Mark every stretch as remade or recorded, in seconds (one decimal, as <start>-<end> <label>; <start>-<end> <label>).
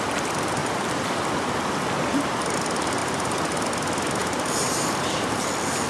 0.0-0.6 recorded; 0.6-1.2 remade; 1.2-3.0 recorded; 3.0-3.7 remade; 3.7-4.2 recorded; 4.2-5.4 remade; 5.4-5.9 recorded